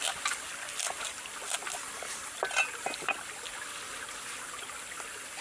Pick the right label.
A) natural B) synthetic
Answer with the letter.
A